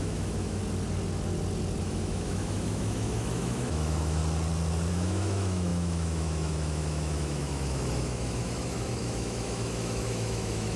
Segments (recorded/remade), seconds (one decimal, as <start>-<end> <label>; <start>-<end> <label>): 0.0-0.6 remade; 0.6-1.8 recorded; 1.8-4.2 remade; 4.2-4.9 recorded; 4.9-10.8 remade

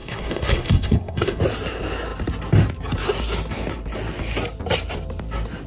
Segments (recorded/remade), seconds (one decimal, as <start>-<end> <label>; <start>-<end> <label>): 0.0-1.4 remade; 1.4-5.7 recorded

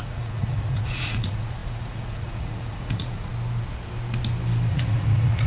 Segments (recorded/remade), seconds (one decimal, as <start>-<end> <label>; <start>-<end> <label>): 0.0-3.3 remade; 3.3-4.7 recorded; 4.7-5.5 remade

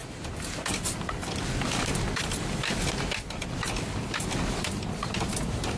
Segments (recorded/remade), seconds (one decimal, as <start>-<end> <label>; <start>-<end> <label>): 0.0-5.8 recorded